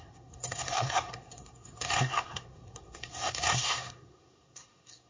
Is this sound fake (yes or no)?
yes